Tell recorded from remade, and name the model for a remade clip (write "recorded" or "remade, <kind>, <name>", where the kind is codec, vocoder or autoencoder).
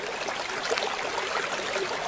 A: recorded